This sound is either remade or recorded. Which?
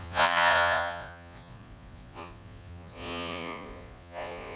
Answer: remade